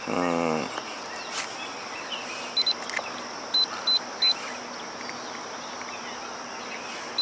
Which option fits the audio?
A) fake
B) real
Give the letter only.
B